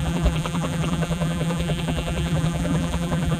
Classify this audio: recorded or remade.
remade